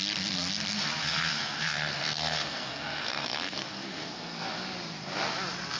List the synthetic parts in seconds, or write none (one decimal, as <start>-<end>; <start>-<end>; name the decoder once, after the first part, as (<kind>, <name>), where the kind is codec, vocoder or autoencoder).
1.0-4.5 (codec, SNAC)

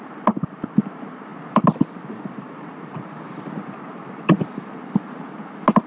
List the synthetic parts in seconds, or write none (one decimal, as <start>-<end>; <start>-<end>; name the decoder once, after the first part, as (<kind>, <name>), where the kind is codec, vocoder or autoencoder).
1.3-4.8 (vocoder, BigVGAN v2)